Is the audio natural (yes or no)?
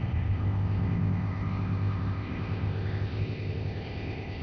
no